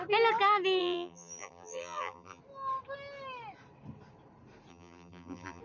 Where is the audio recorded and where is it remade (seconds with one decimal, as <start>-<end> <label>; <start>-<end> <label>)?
0.0-0.8 recorded; 0.8-2.4 remade; 2.4-4.7 recorded; 4.7-5.6 remade